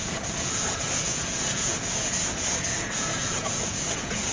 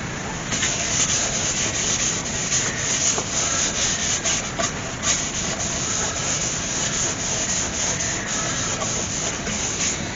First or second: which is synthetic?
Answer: first